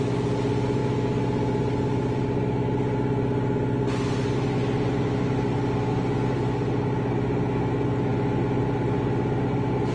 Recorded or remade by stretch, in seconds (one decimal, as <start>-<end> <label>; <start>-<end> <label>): 0.0-9.9 recorded